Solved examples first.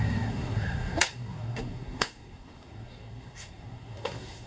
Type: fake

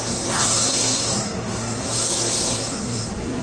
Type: fake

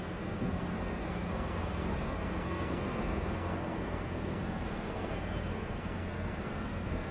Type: fake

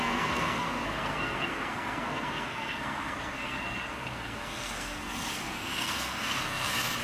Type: fake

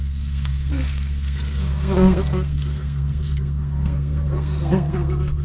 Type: fake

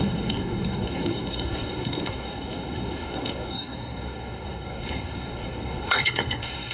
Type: fake